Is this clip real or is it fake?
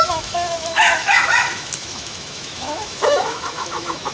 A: fake